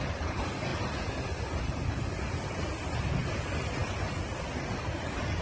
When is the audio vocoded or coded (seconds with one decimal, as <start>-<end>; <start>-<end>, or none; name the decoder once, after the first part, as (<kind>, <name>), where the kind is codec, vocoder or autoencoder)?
none